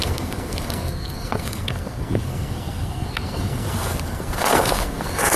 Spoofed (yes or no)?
yes